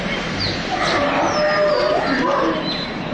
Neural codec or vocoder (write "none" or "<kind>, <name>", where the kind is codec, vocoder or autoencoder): none